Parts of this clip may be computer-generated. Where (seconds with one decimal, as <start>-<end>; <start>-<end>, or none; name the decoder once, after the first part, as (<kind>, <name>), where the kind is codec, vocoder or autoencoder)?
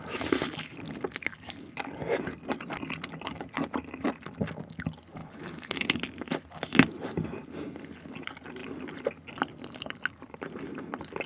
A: 5.2-6.0 (codec, HILCodec)